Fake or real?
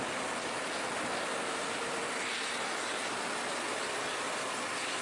real